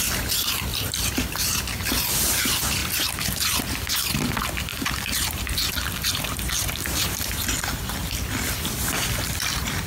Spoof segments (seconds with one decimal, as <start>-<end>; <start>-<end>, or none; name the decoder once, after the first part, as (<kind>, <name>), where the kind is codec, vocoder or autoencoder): 0.7-1.9 (vocoder, BigVGAN v2); 4.7-8.3